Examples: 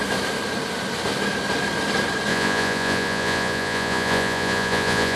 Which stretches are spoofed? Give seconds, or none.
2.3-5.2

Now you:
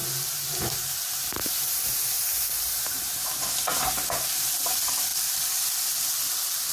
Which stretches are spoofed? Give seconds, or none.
none

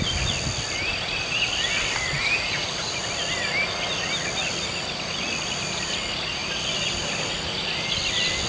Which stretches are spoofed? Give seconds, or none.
none

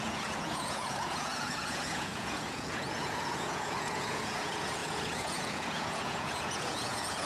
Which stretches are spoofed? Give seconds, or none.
0.0-7.3

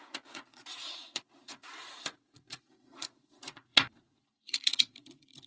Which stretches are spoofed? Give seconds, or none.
0.0-5.5